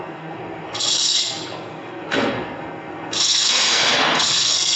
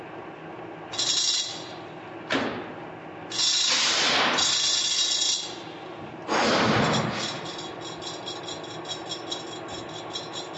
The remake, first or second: first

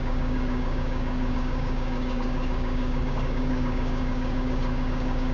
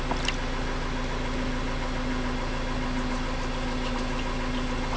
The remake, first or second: first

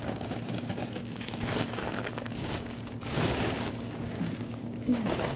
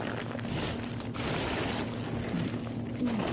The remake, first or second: first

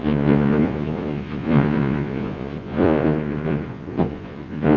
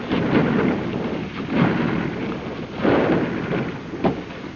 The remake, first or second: first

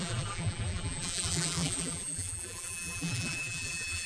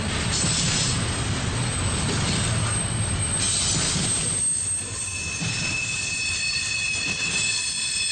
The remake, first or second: first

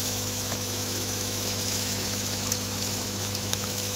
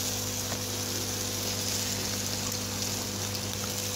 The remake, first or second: first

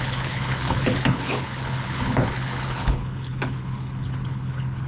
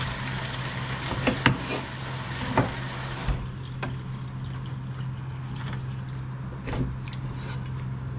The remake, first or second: first